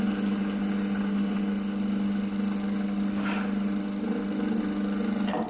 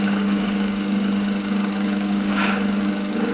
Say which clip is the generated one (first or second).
second